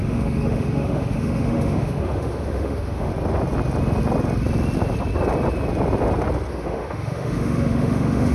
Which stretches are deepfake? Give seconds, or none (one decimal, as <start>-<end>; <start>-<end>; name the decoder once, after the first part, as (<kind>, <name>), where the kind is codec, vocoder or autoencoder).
0.0-3.1 (autoencoder, DAC-VAE); 6.5-8.3